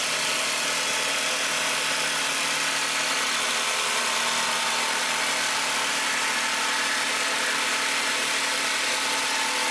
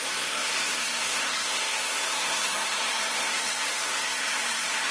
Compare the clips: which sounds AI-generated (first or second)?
second